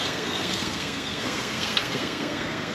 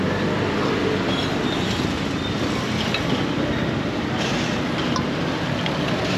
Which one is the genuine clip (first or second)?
second